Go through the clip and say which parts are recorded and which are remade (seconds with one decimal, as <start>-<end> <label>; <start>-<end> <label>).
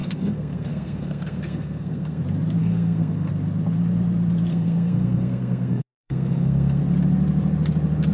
0.0-2.2 remade; 2.2-2.6 recorded; 2.6-3.3 remade; 3.3-4.5 recorded; 4.5-6.8 remade; 6.8-8.1 recorded